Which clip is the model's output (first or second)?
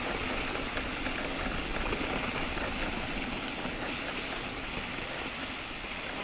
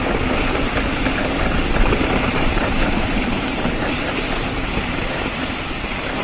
second